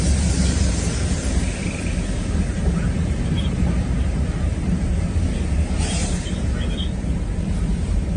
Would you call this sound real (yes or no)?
no